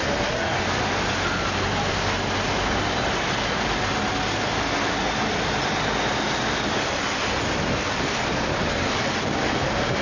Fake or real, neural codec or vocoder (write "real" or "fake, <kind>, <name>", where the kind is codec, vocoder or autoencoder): real